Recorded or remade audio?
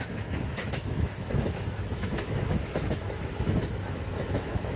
remade